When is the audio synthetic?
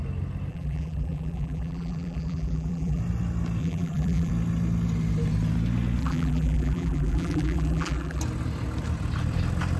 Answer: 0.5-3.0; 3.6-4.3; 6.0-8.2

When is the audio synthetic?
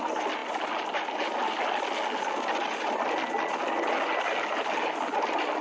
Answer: none